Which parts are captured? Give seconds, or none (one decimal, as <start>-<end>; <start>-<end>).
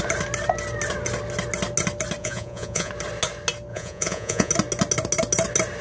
0.0-2.2; 2.9-3.7; 4.5-5.8